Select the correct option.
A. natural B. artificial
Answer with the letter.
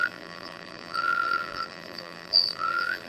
B